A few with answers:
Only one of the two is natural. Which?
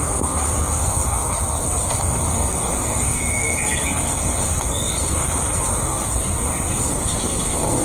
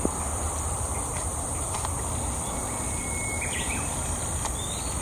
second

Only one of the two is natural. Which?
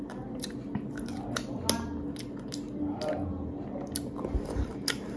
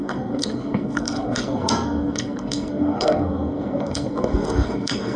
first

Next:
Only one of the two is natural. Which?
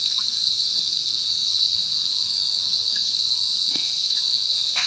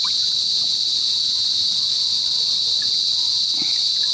second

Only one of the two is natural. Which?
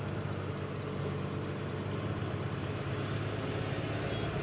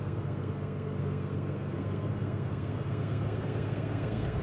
first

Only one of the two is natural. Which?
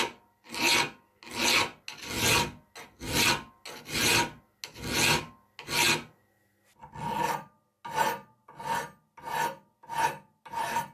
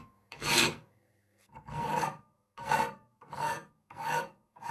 first